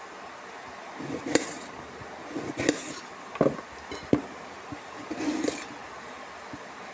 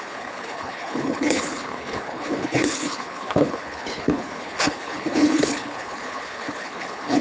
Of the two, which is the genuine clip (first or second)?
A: first